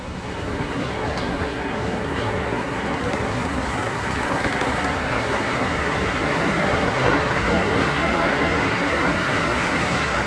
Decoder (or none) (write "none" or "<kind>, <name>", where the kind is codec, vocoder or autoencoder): codec, SNAC